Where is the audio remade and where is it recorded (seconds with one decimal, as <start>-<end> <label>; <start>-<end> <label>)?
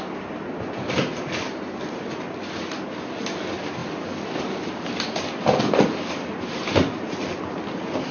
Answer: 0.0-8.1 recorded